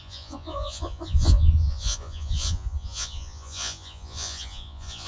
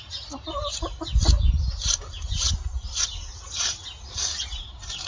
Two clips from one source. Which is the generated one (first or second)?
first